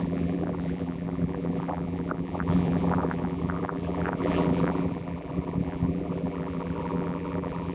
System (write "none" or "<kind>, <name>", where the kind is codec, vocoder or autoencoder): vocoder, BigVGAN v2